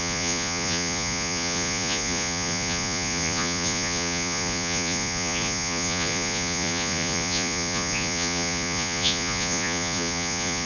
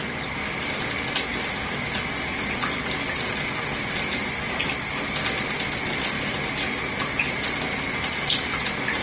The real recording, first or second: second